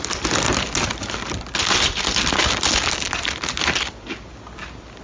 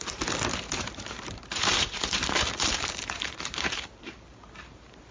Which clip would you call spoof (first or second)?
second